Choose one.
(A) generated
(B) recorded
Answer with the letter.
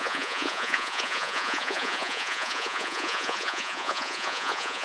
A